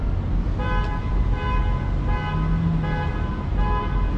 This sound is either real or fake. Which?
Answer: real